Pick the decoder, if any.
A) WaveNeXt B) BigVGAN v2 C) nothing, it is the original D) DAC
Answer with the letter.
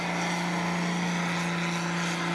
C